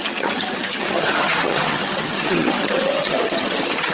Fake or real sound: fake